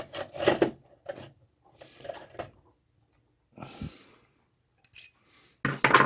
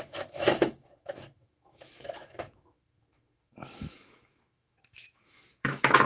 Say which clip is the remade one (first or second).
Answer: second